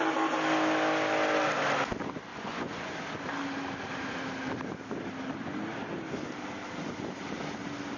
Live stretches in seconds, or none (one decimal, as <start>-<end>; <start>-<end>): 0.0-2.3; 2.9-8.0